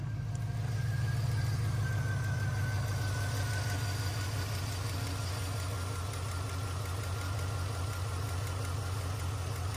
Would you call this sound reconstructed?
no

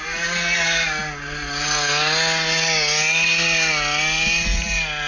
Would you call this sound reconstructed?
no